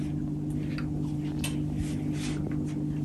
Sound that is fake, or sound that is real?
real